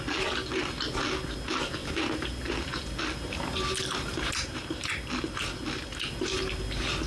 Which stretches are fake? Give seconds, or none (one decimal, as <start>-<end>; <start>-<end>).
1.8-2.8